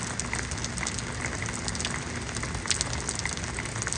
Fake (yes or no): no